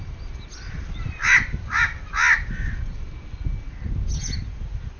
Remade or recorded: recorded